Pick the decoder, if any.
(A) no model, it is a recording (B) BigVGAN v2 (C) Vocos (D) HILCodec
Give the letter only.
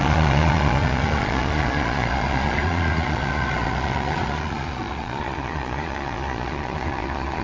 C